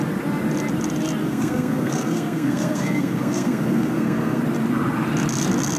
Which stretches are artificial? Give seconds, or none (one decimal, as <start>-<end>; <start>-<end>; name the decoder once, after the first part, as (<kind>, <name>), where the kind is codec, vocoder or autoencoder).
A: 1.2-4.4 (codec, SNAC)